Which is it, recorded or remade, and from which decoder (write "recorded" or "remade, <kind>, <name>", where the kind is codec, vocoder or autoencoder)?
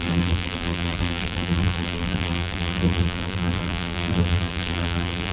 remade, vocoder, BigVGAN v2